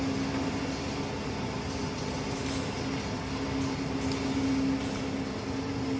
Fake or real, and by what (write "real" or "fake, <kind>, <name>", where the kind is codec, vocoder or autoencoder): real